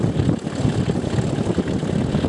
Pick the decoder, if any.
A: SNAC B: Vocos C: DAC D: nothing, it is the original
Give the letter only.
D